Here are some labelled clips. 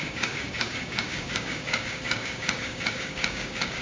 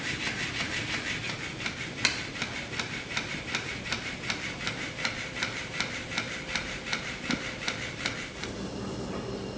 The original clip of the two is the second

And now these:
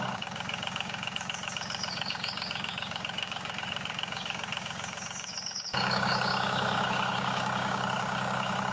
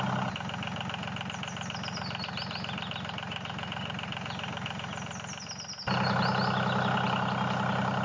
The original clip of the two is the second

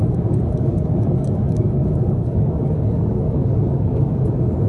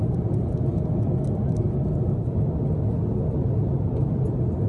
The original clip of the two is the second